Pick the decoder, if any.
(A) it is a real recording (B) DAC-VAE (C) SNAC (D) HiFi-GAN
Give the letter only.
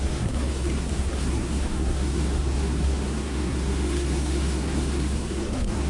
C